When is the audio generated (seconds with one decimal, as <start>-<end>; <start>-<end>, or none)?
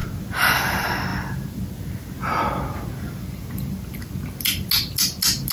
none